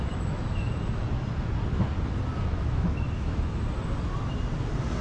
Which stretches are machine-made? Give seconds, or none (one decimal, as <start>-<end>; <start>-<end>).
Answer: 0.0-0.7; 2.5-3.6